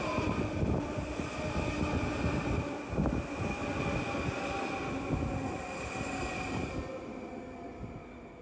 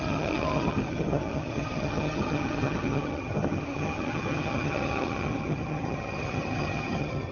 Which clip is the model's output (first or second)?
second